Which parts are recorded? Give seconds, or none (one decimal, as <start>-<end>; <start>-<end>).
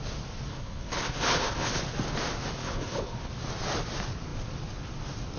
0.0-0.5; 1.8-2.6; 3.3-5.4